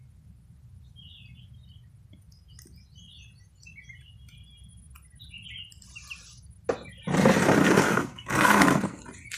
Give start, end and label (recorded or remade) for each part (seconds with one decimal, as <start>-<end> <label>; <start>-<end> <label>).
0.0-7.6 recorded; 7.6-9.0 remade; 9.0-9.4 recorded